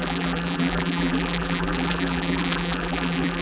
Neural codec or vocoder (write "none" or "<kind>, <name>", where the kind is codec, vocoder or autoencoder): vocoder, BigVGAN v2